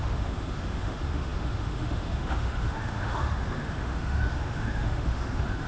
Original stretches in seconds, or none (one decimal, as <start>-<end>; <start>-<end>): none